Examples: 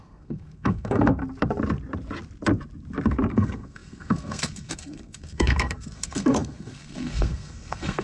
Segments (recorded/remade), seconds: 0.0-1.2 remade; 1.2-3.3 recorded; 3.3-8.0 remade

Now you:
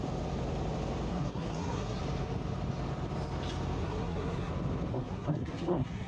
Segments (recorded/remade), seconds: 0.0-1.1 recorded; 1.1-2.0 remade; 2.0-3.8 recorded; 3.8-4.5 remade; 4.5-4.9 recorded; 4.9-6.1 remade